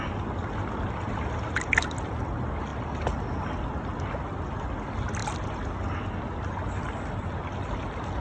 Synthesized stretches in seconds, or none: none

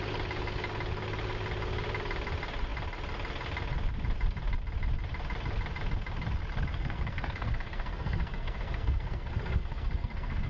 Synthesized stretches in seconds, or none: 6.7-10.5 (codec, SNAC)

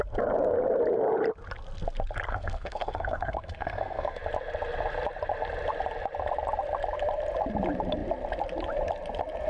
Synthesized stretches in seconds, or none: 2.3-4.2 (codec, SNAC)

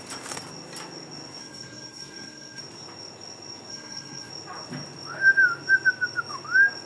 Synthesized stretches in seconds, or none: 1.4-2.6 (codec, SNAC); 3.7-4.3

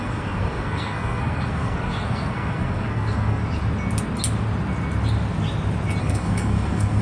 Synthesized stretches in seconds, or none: 0.0-3.4 (codec, SNAC); 6.0-7.0

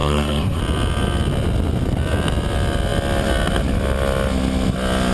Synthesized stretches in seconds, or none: 0.0-0.6 (codec, SNAC)

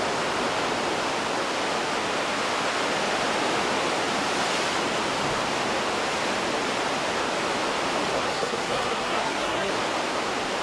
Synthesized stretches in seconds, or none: 8.1-9.7 (codec, SNAC)